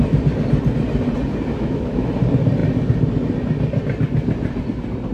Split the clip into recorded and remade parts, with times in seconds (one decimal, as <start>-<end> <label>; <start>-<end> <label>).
0.0-1.5 recorded; 1.5-2.1 remade; 2.1-5.1 recorded